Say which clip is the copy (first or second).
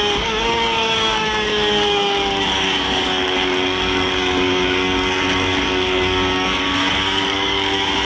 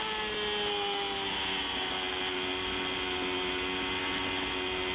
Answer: first